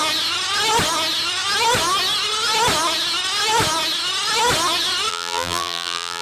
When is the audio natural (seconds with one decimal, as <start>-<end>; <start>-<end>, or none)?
0.0-5.1